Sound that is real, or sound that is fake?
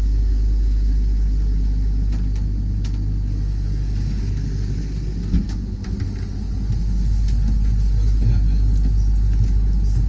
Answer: real